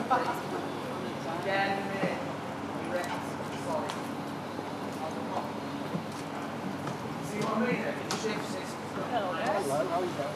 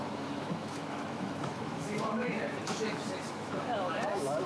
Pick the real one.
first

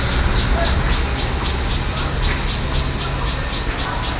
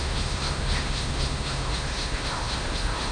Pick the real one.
first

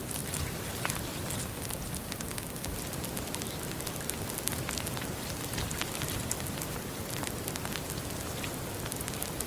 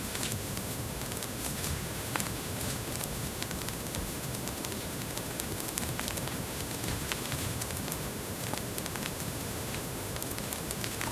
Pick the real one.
first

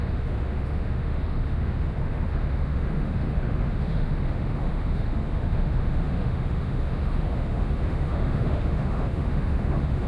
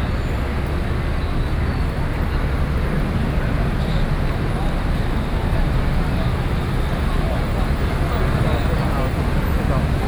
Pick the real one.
second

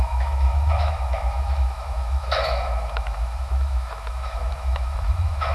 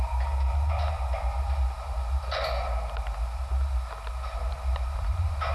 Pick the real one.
second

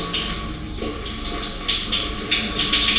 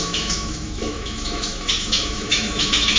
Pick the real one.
first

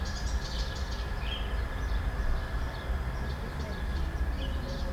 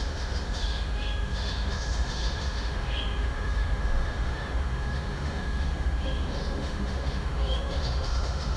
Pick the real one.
first